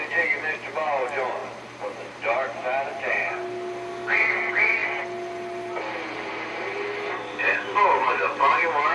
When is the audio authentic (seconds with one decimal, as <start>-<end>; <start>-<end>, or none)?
0.0-4.8; 7.7-8.9